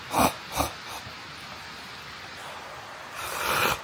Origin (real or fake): real